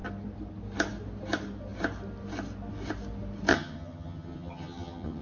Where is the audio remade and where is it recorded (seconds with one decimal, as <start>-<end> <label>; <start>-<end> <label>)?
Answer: 0.0-3.5 recorded; 3.5-5.2 remade